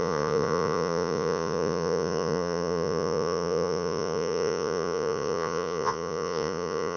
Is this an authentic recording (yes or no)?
no